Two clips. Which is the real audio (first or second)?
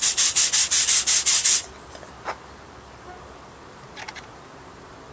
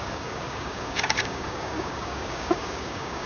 first